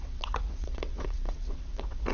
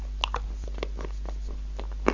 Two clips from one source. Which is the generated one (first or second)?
first